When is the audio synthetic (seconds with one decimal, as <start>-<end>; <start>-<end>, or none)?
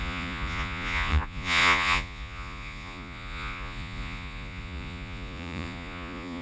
0.0-6.4